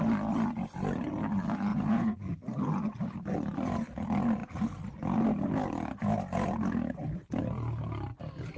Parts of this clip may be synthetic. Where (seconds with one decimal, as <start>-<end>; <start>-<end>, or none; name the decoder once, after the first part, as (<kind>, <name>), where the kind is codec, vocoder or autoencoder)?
1.7-2.4 (vocoder, Vocos)